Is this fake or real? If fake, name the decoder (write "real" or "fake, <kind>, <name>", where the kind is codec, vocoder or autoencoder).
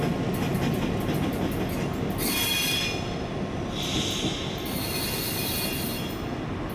real